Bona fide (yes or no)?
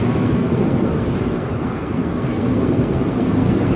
no